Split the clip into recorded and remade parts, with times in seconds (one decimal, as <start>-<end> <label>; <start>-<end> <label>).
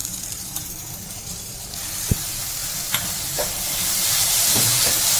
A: 0.0-5.2 remade